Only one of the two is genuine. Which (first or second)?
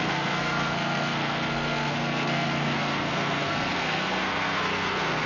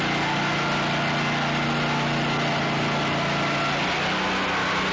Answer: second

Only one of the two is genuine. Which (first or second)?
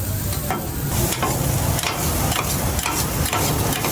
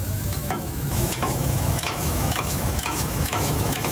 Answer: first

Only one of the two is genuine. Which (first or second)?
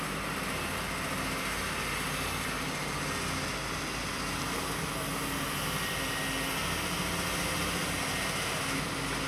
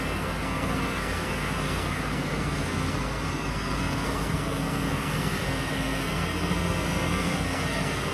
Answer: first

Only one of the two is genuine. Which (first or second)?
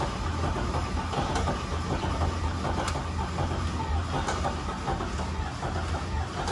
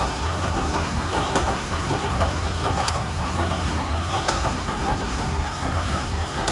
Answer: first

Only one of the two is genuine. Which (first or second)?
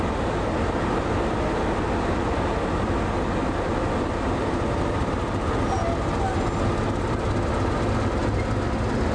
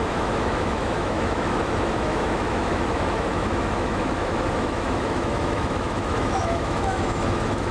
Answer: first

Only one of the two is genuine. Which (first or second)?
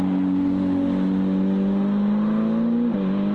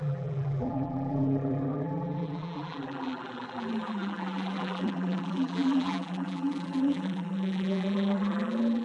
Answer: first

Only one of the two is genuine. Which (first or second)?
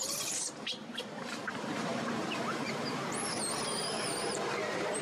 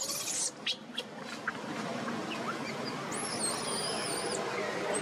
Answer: second